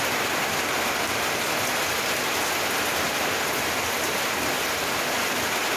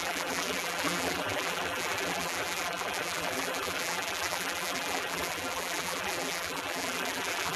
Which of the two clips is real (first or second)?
first